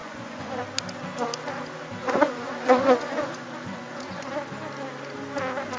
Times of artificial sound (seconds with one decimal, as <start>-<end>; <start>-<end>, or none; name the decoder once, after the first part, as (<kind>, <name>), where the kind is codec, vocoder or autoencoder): 0.0-0.6 (vocoder, Vocos); 2.0-4.3